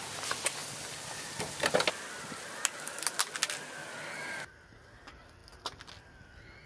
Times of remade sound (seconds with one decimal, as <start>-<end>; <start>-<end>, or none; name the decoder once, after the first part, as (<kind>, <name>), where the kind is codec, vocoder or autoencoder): none